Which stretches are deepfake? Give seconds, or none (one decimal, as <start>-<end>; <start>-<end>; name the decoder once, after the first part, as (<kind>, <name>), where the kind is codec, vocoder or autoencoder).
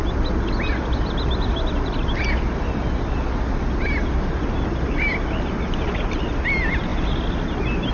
none